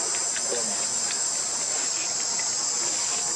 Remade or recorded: recorded